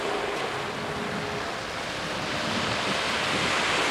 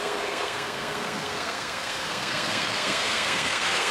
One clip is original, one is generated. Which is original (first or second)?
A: first